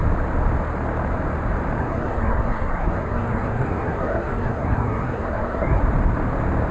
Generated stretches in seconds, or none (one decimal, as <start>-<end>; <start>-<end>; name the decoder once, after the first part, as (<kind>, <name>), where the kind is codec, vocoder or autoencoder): 1.8-5.8 (codec, SNAC)